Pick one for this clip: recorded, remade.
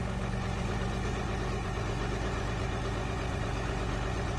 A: remade